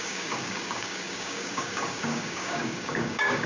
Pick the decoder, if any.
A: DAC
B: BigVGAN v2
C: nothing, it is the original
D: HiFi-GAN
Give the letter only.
A